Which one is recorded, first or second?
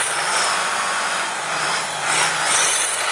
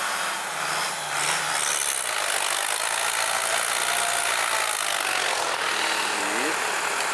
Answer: second